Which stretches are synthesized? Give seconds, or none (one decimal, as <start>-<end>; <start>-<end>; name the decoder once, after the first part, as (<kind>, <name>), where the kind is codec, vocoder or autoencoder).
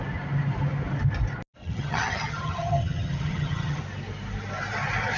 1.6-3.8 (vocoder, HiFi-GAN)